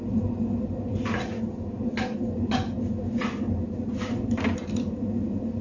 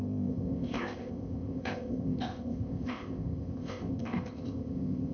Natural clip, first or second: first